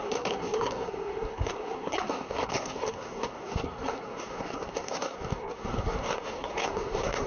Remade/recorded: remade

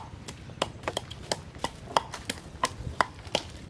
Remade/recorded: recorded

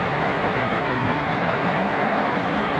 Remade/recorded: remade